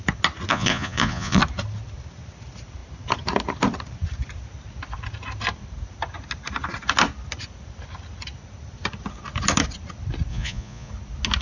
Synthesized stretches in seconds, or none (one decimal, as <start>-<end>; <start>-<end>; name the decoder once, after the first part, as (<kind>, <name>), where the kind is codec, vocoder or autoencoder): 0.5-1.4 (vocoder, Vocos); 10.3-10.9